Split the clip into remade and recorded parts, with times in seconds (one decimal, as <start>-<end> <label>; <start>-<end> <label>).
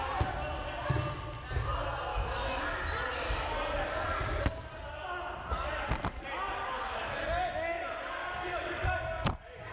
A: 0.0-2.1 recorded; 2.1-2.6 remade; 2.6-9.7 recorded